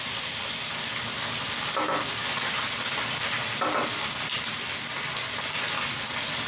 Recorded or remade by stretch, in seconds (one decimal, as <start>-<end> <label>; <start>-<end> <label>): 0.0-6.5 recorded